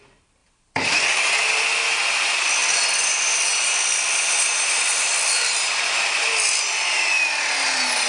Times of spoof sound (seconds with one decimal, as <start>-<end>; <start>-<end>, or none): 0.4-1.3